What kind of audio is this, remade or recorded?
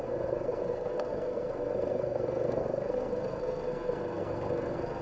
remade